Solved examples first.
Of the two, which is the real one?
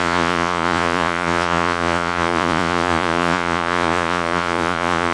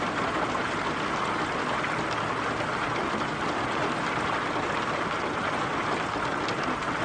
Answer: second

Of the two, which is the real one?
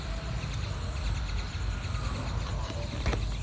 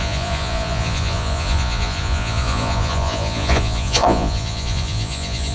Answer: first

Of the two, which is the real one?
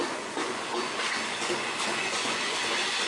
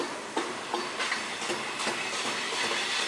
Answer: second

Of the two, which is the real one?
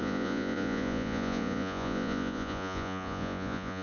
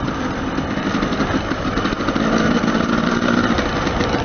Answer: second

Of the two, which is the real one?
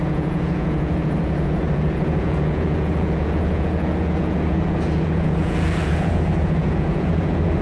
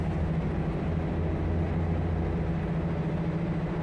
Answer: second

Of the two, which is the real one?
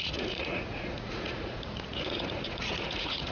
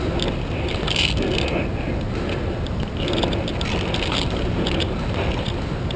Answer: second